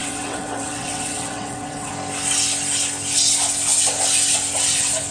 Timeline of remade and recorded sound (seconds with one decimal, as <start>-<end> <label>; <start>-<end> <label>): 0.0-1.9 remade; 1.9-5.1 recorded